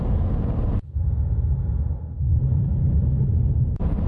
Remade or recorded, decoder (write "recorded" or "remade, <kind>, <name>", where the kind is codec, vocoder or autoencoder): remade, vocoder, BigVGAN v2